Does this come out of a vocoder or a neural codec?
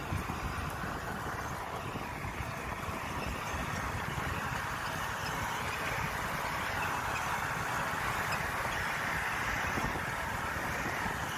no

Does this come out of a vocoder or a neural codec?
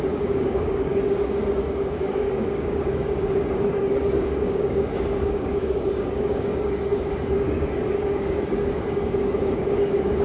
yes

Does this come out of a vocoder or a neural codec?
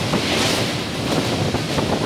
no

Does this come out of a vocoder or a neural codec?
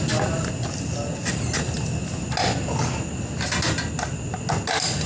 no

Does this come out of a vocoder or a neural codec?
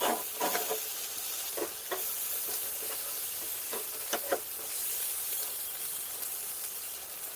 no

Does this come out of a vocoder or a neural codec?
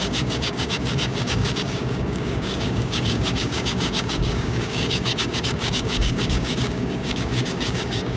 yes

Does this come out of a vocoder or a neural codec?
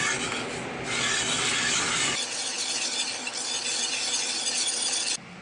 no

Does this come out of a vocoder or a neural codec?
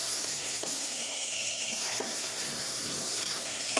yes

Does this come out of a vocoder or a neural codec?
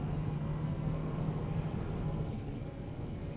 yes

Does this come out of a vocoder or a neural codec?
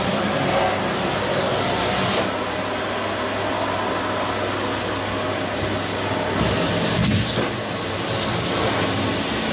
no